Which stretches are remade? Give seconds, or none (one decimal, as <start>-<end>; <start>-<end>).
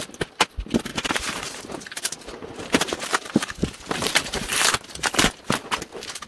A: 0.9-4.7